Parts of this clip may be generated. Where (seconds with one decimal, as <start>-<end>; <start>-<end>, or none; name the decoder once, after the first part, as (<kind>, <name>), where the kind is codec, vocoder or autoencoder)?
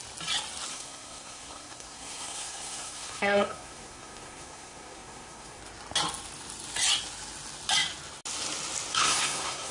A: 0.7-5.6 (codec, SNAC); 8.9-9.7